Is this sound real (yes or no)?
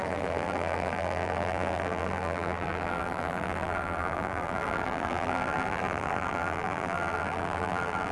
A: no